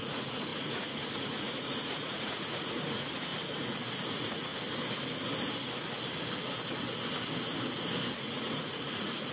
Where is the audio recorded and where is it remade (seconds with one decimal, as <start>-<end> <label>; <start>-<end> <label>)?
0.0-3.3 remade; 3.3-4.1 recorded; 4.1-4.5 remade; 4.5-8.1 recorded; 8.1-9.3 remade